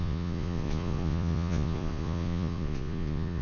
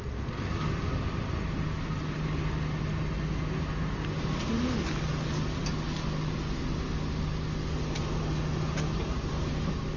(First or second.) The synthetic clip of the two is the first